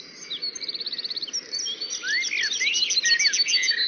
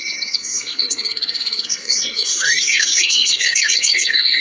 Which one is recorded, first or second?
first